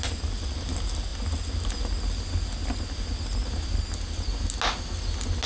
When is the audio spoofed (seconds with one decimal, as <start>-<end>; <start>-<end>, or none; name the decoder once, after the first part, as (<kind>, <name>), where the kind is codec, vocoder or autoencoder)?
none